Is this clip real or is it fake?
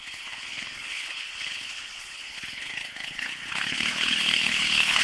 fake